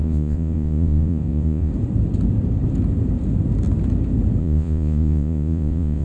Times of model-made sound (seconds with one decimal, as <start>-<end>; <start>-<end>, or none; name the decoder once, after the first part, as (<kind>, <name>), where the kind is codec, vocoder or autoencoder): 0.0-1.7 (vocoder, Vocos); 4.4-6.0